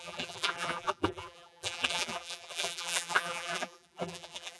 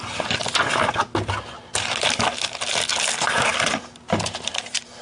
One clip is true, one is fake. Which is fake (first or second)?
first